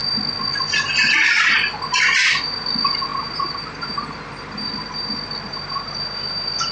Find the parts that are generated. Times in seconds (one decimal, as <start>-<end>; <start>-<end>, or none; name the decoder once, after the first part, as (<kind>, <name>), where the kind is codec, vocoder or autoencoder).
none